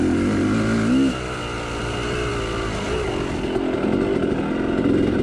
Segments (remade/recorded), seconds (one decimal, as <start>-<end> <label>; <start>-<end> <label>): 0.0-5.2 recorded